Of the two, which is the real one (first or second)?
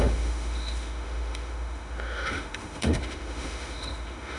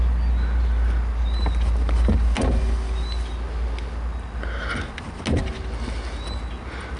second